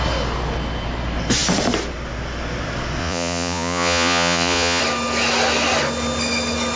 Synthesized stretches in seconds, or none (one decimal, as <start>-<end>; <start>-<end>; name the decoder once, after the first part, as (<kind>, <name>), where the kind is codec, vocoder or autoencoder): 3.0-4.8 (vocoder, Vocos)

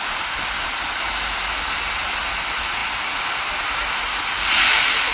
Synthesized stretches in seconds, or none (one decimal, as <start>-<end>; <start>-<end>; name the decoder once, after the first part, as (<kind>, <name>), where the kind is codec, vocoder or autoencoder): none

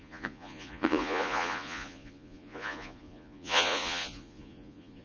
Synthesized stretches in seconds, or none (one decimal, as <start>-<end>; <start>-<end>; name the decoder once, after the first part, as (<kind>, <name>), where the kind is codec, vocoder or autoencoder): 0.0-5.0 (vocoder, Vocos)

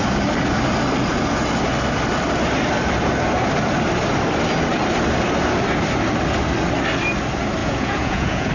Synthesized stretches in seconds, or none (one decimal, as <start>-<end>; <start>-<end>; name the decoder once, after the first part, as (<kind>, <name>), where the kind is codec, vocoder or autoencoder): 7.6-8.5 (vocoder, Vocos)

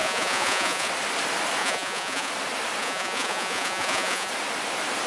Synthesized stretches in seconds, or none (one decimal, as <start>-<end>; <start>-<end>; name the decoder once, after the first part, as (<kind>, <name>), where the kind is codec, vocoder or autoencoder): 0.0-0.9 (vocoder, Vocos); 1.6-2.3; 2.8-4.3

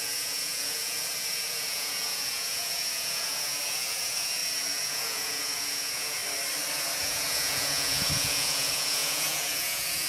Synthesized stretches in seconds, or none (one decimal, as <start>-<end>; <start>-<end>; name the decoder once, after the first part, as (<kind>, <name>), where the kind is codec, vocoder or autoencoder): 0.0-6.2 (vocoder, Vocos); 6.8-10.1

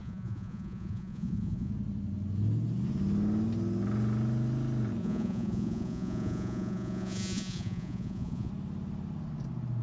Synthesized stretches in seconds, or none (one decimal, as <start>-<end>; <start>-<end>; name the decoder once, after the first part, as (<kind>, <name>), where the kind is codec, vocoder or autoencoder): 0.0-1.7 (vocoder, Vocos); 5.0-8.5